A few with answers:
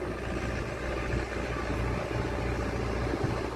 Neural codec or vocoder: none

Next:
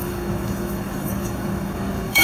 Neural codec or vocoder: codec, DAC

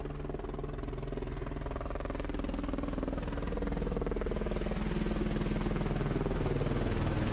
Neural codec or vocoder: none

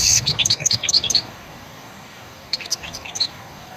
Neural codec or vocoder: codec, DAC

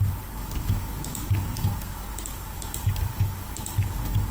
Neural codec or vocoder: codec, DAC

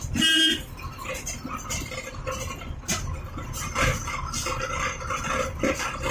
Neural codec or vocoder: none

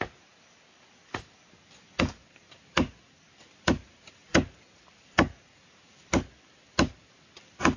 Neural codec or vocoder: none